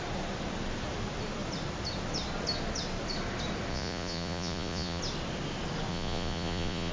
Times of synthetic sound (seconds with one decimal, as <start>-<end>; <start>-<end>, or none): 3.7-5.0; 5.9-6.9